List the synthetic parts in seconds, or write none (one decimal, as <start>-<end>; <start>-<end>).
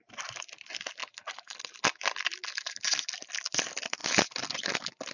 none